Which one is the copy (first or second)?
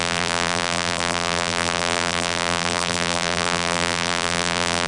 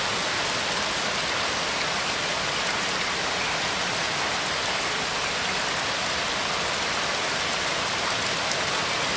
first